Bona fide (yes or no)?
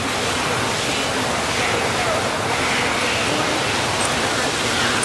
yes